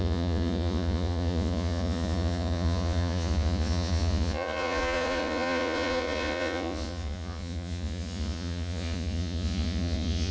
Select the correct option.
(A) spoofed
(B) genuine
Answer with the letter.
A